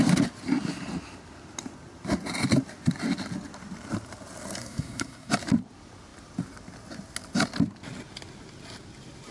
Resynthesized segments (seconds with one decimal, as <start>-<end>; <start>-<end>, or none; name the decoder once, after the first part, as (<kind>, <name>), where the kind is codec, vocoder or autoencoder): 4.6-5.3 (codec, SNAC)